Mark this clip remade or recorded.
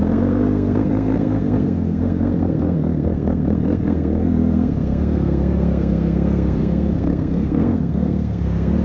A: remade